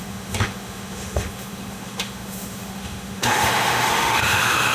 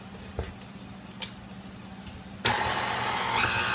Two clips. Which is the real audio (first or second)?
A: second